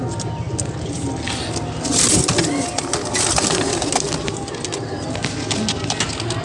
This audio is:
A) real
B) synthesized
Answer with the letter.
A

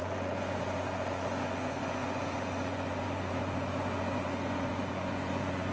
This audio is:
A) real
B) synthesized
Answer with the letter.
B